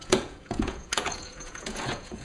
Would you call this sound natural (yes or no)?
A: no